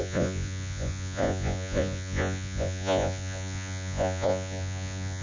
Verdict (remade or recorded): remade